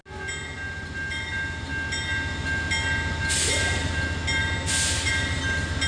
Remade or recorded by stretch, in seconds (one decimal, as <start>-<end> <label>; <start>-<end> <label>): 0.0-5.9 recorded